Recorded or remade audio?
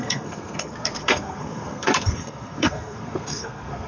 remade